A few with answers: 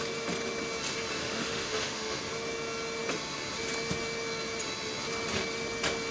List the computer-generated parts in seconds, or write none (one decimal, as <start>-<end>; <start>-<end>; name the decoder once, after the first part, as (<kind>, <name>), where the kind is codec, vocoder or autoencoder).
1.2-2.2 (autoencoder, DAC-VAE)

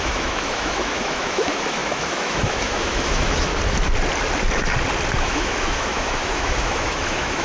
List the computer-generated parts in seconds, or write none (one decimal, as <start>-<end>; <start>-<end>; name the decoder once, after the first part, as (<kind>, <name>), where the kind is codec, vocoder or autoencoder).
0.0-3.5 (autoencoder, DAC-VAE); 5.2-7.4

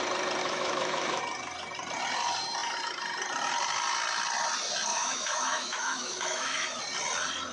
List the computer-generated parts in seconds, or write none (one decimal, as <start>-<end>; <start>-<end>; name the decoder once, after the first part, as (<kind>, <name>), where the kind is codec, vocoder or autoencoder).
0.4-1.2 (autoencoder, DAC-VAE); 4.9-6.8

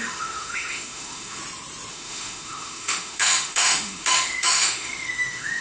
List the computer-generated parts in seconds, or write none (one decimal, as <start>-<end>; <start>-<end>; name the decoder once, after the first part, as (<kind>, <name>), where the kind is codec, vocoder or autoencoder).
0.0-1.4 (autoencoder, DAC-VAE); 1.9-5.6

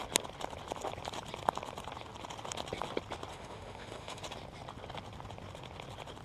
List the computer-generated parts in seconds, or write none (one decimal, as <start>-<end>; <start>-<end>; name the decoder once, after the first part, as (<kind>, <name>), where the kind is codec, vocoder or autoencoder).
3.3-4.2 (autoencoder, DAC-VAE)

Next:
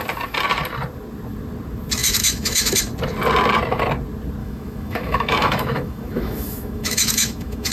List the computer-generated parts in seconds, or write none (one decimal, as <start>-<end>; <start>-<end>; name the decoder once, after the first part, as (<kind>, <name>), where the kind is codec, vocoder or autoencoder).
2.0-2.8 (autoencoder, DAC-VAE); 4.4-7.7

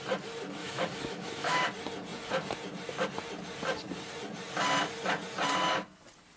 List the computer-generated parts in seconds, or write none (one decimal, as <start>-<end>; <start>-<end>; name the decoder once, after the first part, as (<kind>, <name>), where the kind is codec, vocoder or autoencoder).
0.6-1.6 (autoencoder, DAC-VAE)

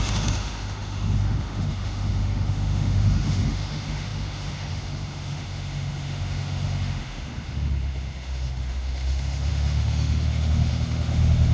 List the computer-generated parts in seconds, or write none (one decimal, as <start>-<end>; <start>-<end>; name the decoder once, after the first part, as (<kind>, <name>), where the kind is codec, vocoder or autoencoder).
0.0-11.5 (autoencoder, DAC-VAE)